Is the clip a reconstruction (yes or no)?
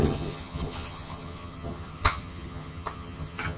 yes